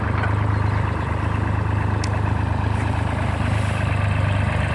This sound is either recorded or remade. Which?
recorded